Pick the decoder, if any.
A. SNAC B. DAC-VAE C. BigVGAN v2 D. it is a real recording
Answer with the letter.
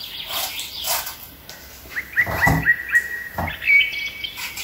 D